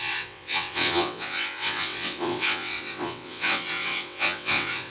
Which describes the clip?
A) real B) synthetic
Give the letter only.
B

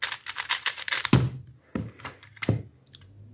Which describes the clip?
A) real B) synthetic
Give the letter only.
A